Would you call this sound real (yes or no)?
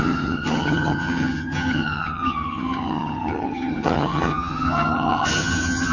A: no